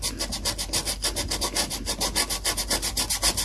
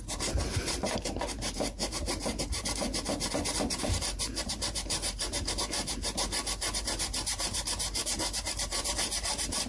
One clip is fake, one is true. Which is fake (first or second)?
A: second